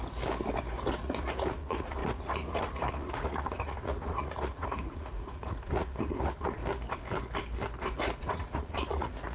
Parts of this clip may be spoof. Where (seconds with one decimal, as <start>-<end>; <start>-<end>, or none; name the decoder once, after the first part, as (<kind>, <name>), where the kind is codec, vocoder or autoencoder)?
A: 0.9-6.6 (vocoder, Vocos); 8.2-9.3